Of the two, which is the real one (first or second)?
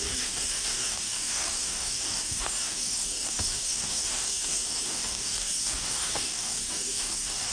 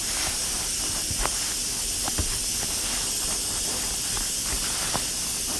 second